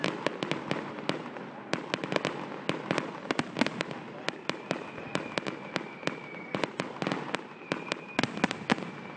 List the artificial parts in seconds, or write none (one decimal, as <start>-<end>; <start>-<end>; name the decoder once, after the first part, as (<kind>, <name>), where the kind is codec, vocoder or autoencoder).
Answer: none